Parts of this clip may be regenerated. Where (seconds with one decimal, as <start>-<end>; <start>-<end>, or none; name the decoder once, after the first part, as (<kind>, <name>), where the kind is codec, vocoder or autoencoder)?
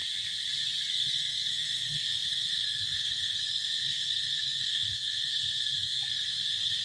0.9-6.8 (codec, SNAC)